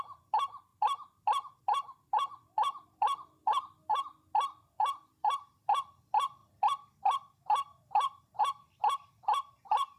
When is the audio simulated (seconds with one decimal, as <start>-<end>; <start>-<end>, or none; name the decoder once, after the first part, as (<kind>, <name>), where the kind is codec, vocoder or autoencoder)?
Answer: 0.0-0.7 (vocoder, BigVGAN v2); 1.6-3.4; 3.9-7.7; 8.4-10.0